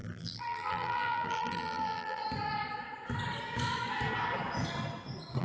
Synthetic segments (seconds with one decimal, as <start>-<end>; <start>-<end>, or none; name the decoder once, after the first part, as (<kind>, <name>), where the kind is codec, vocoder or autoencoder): 0.0-2.2 (vocoder, BigVGAN v2)